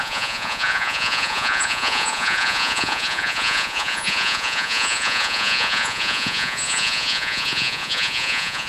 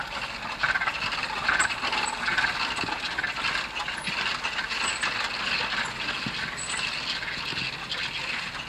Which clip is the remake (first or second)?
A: first